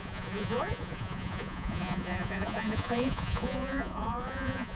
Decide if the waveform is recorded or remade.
remade